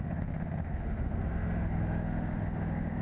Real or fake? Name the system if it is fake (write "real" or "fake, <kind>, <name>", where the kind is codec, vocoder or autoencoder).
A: fake, autoencoder, DAC-VAE